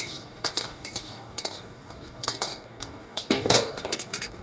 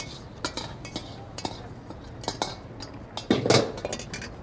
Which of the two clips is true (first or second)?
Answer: second